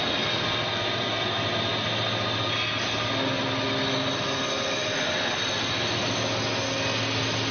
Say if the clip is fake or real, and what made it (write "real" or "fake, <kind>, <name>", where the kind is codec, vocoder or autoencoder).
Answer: real